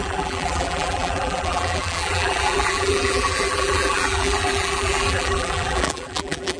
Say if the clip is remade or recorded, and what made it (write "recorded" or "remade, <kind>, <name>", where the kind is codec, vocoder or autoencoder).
remade, vocoder, BigVGAN v2